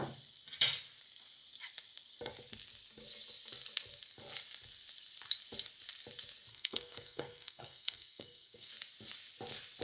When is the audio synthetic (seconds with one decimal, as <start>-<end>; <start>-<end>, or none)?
6.5-8.7